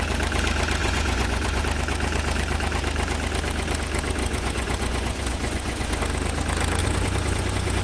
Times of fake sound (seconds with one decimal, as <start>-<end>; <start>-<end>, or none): 0.8-1.6; 4.2-6.0; 6.8-7.8